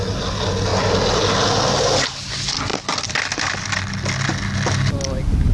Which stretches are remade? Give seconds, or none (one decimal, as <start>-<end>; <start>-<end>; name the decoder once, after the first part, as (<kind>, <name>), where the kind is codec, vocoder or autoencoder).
none